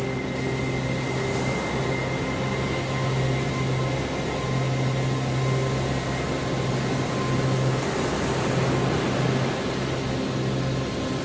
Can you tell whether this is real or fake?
real